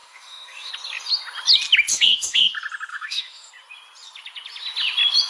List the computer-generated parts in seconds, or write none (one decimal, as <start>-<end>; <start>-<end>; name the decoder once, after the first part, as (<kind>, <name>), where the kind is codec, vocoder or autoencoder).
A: 0.0-0.7 (autoencoder, DAC-VAE); 1.9-2.5; 2.9-3.5